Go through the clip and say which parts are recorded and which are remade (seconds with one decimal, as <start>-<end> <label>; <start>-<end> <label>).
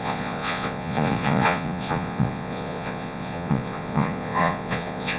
0.0-5.2 remade